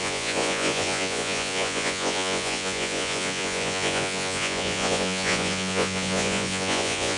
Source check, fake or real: fake